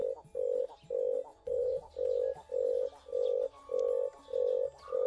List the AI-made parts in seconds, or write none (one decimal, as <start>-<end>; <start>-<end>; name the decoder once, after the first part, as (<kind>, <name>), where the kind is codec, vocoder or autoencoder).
1.3-1.9 (vocoder, Vocos)